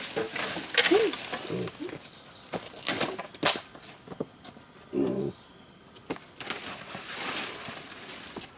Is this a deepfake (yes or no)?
no